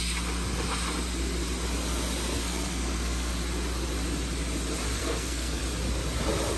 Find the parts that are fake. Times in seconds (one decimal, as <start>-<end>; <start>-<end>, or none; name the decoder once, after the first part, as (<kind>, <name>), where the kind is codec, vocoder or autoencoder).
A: 2.4-3.3 (codec, SNAC); 5.0-5.6